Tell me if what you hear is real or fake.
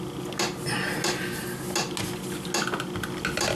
real